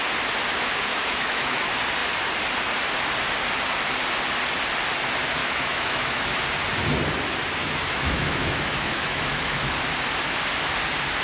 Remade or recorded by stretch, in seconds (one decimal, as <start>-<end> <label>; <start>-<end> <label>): 0.0-0.9 recorded; 0.9-1.6 remade; 1.6-5.4 recorded; 5.4-6.4 remade; 6.4-7.6 recorded; 7.6-9.7 remade; 9.7-11.2 recorded

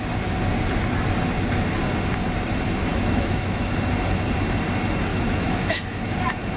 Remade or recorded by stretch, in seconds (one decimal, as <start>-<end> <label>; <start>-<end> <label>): 0.0-2.9 recorded; 2.9-3.6 remade; 3.6-5.1 recorded; 5.1-6.1 remade; 6.1-6.6 recorded